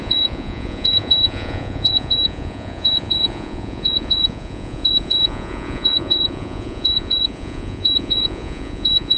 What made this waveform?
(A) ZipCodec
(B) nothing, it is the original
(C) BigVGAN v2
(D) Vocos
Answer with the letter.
D